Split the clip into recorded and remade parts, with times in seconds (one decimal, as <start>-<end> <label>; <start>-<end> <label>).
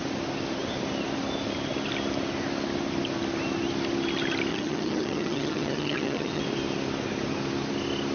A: 0.0-4.5 recorded; 4.5-6.4 remade; 6.4-8.1 recorded